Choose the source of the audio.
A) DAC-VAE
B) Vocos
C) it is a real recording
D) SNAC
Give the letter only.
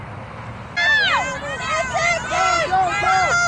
C